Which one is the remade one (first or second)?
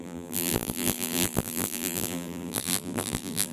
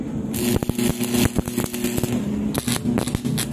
first